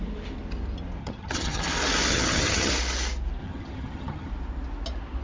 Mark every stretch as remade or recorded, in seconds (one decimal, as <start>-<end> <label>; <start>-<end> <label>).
0.0-1.0 recorded; 1.0-1.6 remade; 1.6-2.1 recorded; 2.1-2.7 remade; 2.7-3.4 recorded; 3.4-4.3 remade; 4.3-5.2 recorded